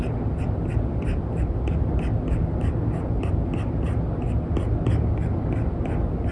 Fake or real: real